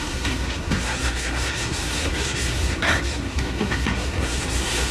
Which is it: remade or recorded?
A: remade